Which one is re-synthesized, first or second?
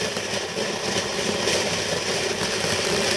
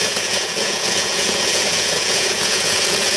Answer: second